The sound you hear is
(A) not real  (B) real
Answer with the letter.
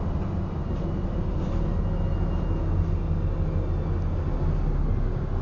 B